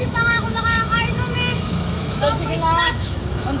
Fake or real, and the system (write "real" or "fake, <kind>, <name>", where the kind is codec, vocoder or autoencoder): fake, autoencoder, DAC-VAE